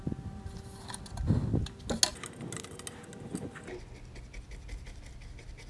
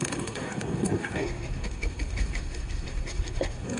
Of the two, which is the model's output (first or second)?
second